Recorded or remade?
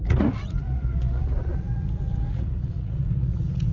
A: remade